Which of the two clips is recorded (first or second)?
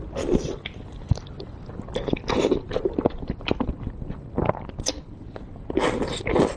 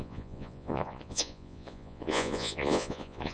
first